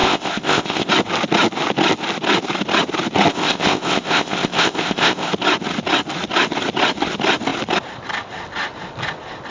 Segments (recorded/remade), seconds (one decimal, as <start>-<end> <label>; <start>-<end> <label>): 0.0-0.9 remade; 0.9-3.3 recorded; 3.3-5.3 remade; 5.3-9.5 recorded